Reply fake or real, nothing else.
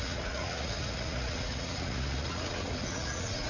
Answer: fake